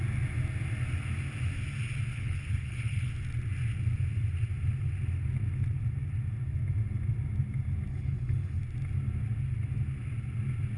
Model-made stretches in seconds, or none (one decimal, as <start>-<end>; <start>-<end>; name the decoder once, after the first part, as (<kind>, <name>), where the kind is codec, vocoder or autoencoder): 2.1-3.1 (codec, HILCodec); 7.9-8.6